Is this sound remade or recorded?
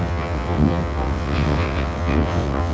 remade